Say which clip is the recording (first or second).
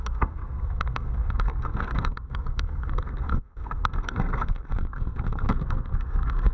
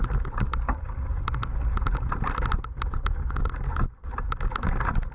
second